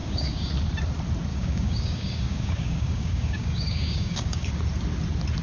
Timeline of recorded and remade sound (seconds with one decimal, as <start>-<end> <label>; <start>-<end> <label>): 0.0-0.5 remade; 0.5-1.3 recorded; 1.3-4.5 remade; 4.5-5.4 recorded